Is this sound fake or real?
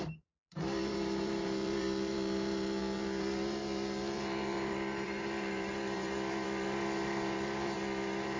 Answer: fake